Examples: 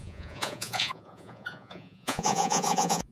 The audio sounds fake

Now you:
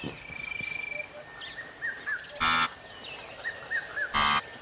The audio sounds real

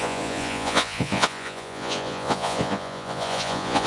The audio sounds fake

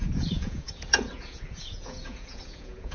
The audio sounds fake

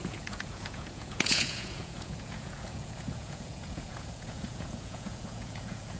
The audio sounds fake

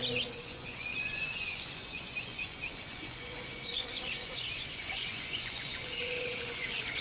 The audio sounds fake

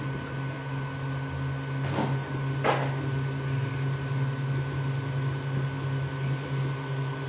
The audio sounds real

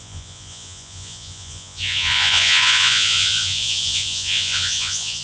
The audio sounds fake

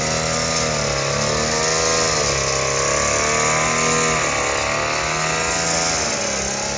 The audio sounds real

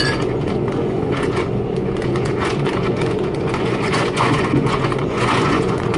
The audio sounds fake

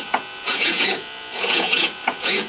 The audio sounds fake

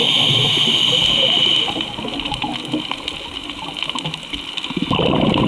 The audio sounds real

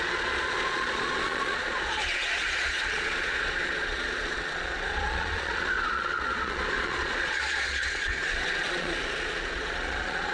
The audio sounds fake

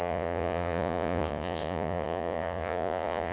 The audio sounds fake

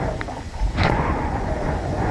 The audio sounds fake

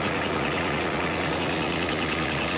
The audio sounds fake